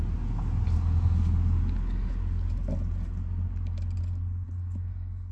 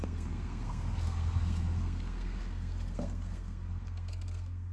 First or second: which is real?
first